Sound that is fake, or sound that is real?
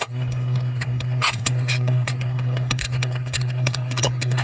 fake